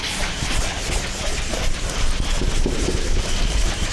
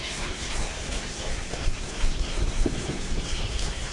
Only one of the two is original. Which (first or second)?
first